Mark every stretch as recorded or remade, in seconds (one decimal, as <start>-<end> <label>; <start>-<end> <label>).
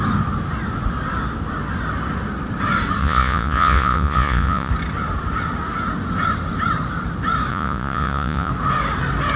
0.0-3.0 recorded; 3.0-4.7 remade; 4.7-7.5 recorded; 7.5-8.5 remade; 8.5-9.4 recorded